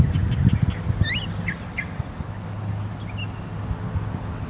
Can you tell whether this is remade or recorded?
recorded